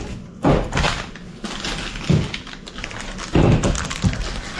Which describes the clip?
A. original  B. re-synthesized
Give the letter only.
A